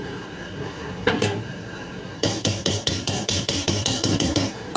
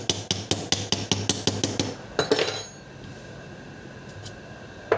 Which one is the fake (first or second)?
first